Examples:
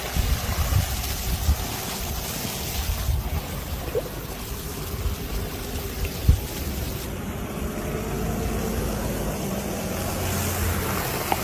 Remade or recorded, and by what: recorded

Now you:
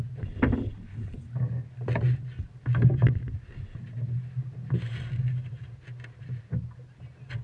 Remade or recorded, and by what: recorded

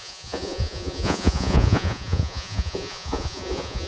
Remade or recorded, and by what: remade, vocoder, Vocos